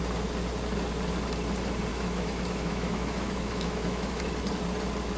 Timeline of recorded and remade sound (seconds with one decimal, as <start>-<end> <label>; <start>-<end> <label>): 0.0-1.9 recorded; 1.9-4.3 remade; 4.3-5.2 recorded